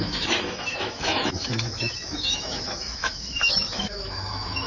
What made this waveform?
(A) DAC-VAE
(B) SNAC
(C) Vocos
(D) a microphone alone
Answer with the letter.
A